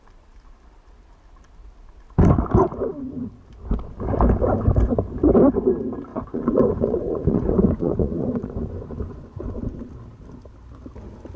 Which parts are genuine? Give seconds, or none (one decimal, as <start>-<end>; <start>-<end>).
0.0-6.1; 9.4-11.4